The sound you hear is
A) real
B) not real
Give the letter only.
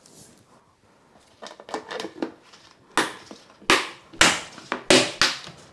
A